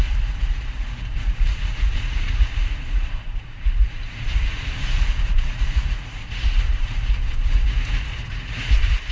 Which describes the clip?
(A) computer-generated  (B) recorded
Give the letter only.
A